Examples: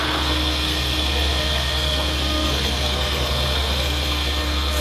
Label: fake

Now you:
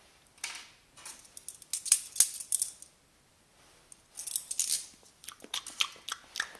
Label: real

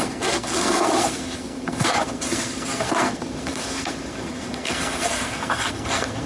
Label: fake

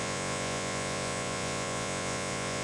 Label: fake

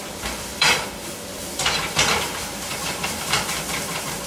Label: fake